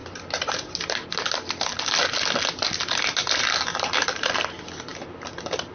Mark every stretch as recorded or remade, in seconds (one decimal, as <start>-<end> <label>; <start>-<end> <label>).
0.0-5.7 recorded